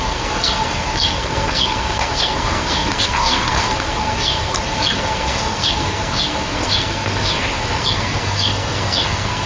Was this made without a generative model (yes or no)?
no